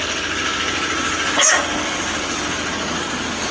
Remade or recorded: remade